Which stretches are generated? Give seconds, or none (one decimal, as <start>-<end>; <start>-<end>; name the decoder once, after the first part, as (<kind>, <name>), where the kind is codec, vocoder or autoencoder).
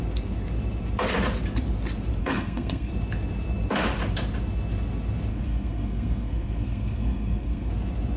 2.2-2.9 (codec, SNAC); 5.3-7.7